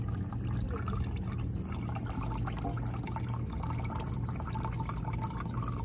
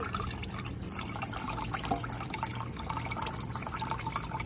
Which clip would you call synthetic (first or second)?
second